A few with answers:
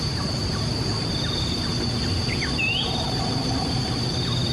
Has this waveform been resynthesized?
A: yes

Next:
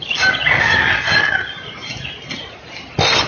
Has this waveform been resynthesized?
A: no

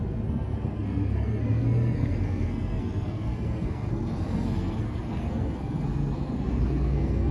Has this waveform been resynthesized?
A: yes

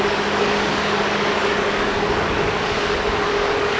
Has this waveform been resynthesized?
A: yes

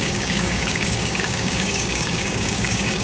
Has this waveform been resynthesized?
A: yes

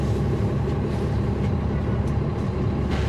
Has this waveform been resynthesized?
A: no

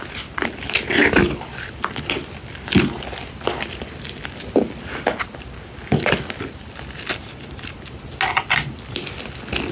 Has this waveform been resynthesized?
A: no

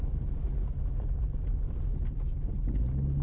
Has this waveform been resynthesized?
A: no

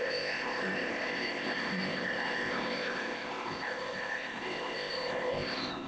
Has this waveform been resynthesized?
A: yes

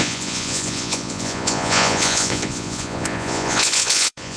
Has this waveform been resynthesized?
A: yes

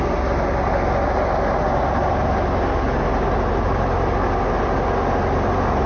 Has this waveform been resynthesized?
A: no